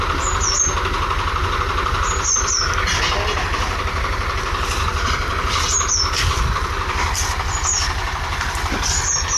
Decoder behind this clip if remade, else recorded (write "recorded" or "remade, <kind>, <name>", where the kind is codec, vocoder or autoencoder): recorded